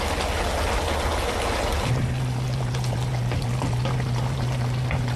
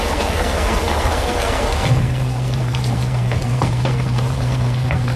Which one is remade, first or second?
second